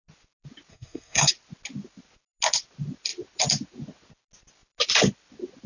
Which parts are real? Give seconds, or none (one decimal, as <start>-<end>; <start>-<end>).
0.0-0.7; 1.3-5.7